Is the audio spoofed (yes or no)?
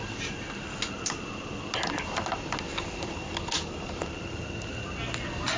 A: no